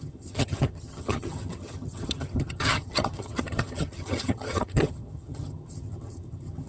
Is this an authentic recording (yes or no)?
no